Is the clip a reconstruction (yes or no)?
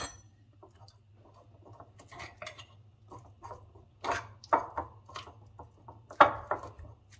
no